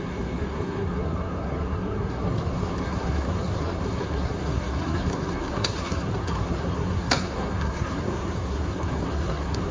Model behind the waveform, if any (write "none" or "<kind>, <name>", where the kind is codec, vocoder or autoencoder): codec, SNAC